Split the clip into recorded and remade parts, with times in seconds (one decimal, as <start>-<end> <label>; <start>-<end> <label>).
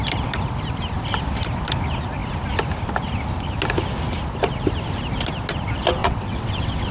0.0-6.0 recorded; 6.0-6.9 remade